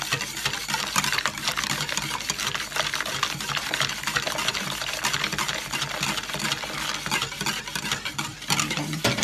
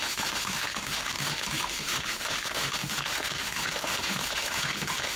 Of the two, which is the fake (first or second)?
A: second